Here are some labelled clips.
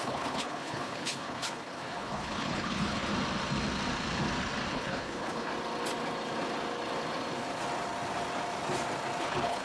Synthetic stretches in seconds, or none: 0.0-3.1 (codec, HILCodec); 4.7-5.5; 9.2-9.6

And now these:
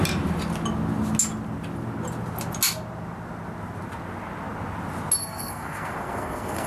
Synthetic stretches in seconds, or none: 5.2-6.7 (codec, SNAC)

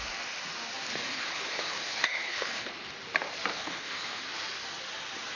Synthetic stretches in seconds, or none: 0.9-2.7 (codec, HILCodec); 3.5-4.2

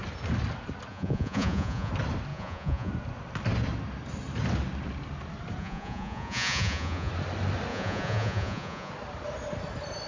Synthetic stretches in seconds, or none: 0.9-1.9 (vocoder, Vocos); 2.3-2.9; 5.6-7.1; 7.7-8.9